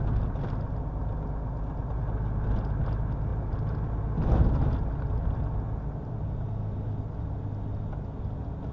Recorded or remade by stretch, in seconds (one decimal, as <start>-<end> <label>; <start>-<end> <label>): 0.0-8.7 recorded